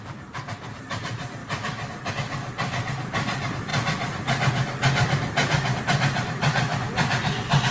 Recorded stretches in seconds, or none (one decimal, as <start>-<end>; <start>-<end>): 1.4-2.1; 3.7-5.8; 6.7-7.7